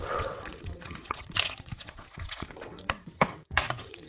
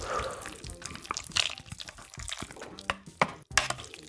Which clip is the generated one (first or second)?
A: first